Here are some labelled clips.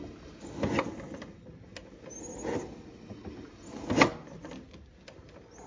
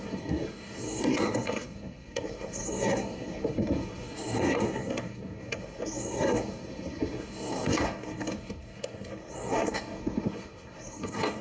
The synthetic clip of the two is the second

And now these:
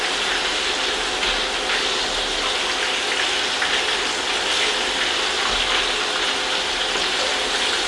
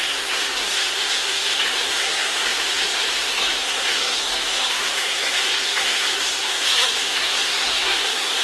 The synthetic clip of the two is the second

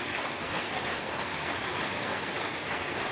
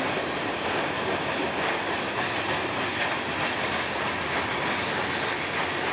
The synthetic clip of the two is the first